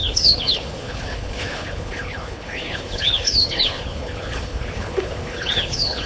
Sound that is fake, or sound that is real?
fake